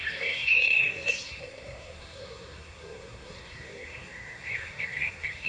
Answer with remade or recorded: remade